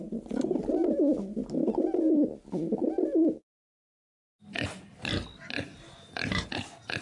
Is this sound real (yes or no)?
yes